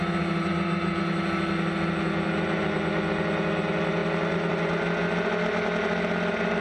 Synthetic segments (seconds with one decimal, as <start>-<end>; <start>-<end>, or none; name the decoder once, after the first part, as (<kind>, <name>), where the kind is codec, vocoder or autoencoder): none